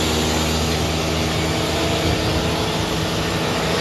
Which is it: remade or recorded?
recorded